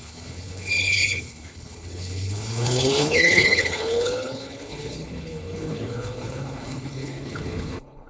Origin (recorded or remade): remade